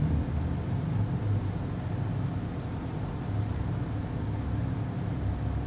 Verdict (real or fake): real